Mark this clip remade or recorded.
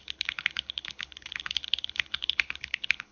remade